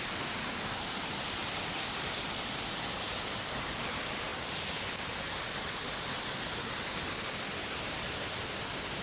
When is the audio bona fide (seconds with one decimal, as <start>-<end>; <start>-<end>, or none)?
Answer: 0.0-9.0